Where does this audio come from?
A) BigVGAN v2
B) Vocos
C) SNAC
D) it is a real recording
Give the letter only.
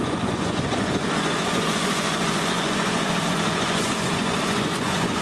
B